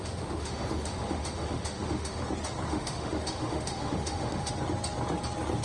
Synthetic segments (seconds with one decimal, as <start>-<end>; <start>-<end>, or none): 0.0-2.2; 2.7-4.5

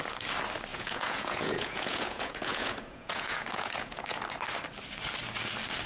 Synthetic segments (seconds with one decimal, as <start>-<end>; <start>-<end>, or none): 0.7-4.2

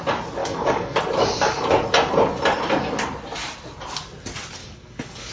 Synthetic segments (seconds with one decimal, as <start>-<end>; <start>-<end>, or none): 0.4-1.0; 4.6-5.3

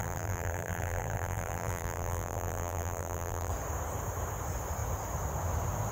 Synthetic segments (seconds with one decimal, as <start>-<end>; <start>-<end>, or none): 0.0-3.5